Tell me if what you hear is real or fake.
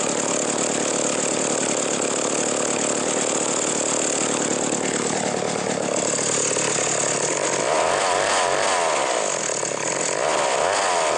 real